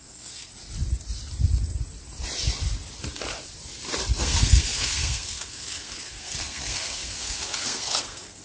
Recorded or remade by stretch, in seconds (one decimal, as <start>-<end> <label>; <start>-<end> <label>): 0.0-0.5 remade; 0.5-4.2 recorded; 4.2-8.4 remade

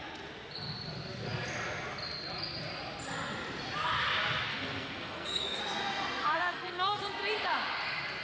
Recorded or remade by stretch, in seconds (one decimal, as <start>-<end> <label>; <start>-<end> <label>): 0.0-4.5 recorded; 4.5-5.6 remade; 5.6-6.2 recorded; 6.2-7.0 remade; 7.0-8.2 recorded

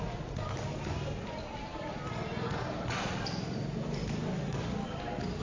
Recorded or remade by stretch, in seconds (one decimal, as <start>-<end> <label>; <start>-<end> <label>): 0.0-4.0 remade; 4.0-5.4 recorded